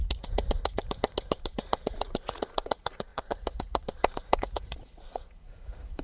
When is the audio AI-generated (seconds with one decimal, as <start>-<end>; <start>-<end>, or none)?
0.0-6.0